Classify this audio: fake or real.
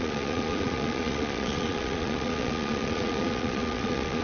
fake